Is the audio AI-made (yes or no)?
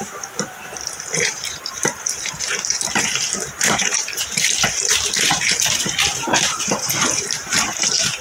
yes